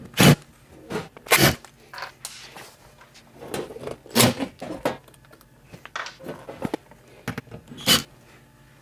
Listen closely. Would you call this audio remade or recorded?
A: recorded